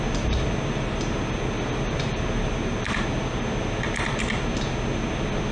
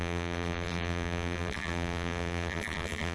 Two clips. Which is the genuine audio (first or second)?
first